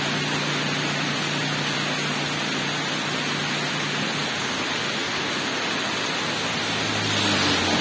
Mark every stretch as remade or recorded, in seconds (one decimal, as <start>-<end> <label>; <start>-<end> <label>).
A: 0.0-7.8 recorded